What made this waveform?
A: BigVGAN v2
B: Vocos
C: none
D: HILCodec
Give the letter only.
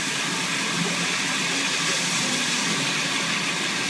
C